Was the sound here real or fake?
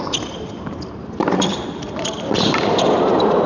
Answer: real